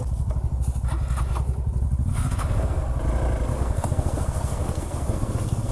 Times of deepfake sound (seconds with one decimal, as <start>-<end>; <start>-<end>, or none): 2.1-2.8; 3.5-5.7